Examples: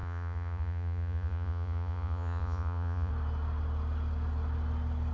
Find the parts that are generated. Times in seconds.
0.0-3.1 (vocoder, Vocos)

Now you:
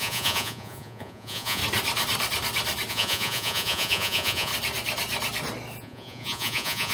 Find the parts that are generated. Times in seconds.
0.0-1.6 (vocoder, Vocos); 2.9-4.5; 5.8-6.9

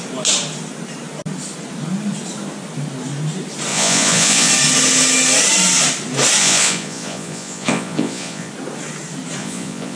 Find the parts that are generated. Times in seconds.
3.7-4.5 (vocoder, Vocos); 6.4-8.5; 9.4-10.0

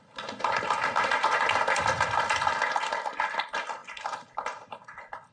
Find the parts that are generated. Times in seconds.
none

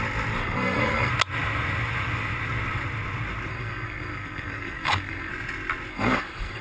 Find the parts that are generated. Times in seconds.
0.4-1.1 (codec, SNAC); 3.5-5.3; 5.9-6.6

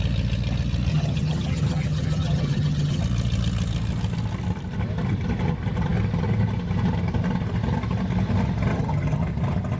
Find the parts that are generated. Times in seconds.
0.9-3.0 (vocoder, HiFi-GAN); 8.7-9.2

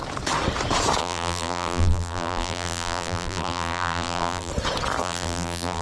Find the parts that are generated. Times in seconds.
1.0-4.5 (vocoder, BigVGAN v2); 5.0-5.8

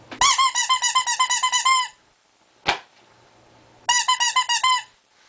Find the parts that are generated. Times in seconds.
none